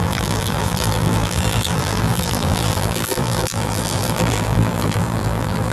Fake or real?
fake